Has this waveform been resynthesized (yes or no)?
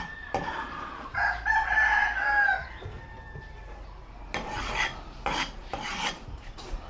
no